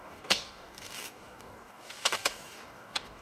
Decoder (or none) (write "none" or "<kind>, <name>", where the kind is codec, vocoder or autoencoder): codec, DAC